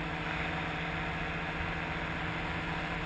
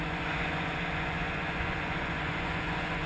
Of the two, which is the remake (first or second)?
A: second